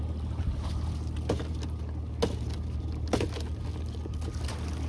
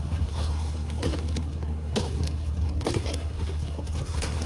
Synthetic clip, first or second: second